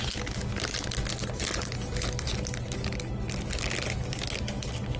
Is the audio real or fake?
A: real